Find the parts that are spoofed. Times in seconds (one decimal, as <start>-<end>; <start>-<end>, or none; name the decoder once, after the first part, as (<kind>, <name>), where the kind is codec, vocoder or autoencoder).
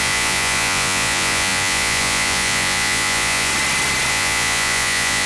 0.0-3.5 (vocoder, Vocos); 4.1-5.3